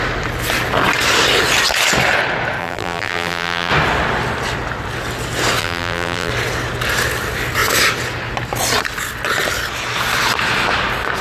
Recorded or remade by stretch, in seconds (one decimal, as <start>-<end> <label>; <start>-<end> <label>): 0.0-2.6 recorded; 2.6-3.7 remade; 3.7-5.6 recorded; 5.6-6.3 remade; 6.3-11.2 recorded